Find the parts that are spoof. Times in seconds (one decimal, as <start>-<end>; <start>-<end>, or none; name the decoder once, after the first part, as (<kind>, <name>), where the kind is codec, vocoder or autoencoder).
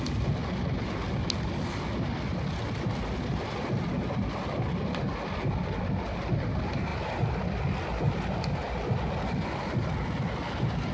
none